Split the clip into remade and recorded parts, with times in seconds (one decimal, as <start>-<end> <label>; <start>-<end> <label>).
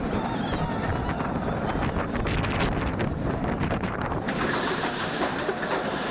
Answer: 0.0-3.6 recorded; 3.6-5.5 remade; 5.5-6.1 recorded